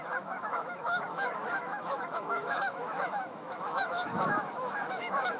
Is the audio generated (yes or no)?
yes